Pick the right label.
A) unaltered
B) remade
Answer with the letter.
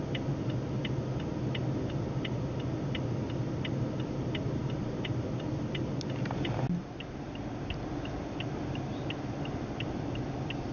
A